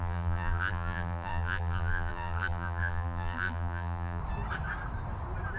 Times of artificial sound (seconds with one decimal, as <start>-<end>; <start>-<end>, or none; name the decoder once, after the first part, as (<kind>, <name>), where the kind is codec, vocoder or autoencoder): 0.0-4.2 (vocoder, BigVGAN v2)